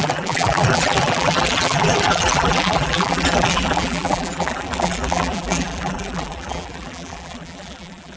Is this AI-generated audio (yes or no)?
yes